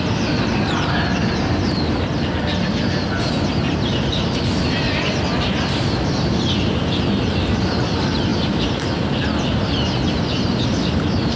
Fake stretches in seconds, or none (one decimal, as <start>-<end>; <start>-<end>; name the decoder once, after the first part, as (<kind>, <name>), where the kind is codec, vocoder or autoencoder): none